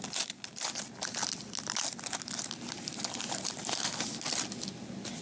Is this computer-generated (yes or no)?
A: no